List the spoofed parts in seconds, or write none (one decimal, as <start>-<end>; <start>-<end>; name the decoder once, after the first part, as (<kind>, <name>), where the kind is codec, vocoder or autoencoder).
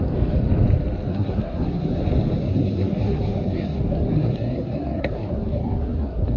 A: 1.1-2.0 (codec, SNAC); 2.4-6.4